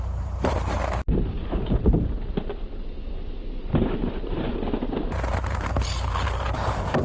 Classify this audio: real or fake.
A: fake